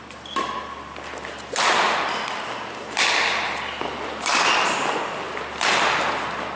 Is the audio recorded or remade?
recorded